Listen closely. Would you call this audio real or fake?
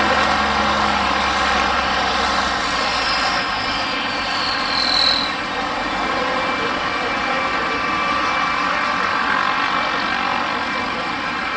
real